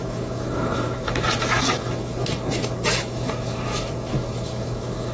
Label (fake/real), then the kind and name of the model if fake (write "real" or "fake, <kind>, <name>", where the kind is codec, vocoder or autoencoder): fake, autoencoder, DAC-VAE